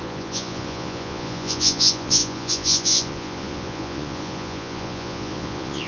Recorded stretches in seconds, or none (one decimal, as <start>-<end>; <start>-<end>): none